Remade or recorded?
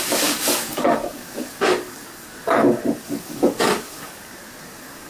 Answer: remade